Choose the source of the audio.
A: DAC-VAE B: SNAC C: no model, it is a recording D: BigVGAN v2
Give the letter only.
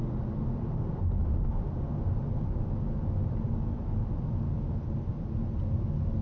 C